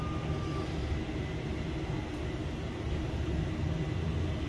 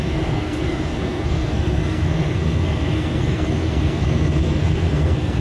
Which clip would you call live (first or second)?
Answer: first